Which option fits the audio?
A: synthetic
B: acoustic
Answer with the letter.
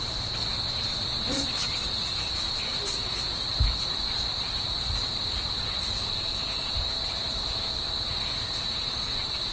A